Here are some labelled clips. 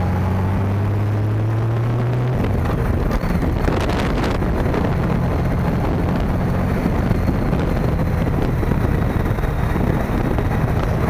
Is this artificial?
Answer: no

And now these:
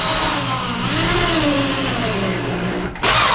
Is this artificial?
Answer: no